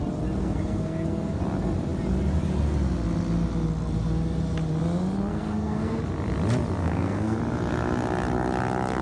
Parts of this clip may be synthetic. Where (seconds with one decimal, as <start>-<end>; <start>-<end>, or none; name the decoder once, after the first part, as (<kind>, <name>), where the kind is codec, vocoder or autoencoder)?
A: 0.4-1.4 (codec, SNAC); 5.3-6.0; 6.8-7.4